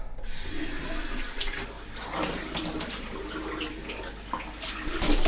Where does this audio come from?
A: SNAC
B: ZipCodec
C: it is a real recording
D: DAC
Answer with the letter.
C